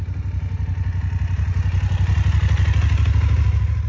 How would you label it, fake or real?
real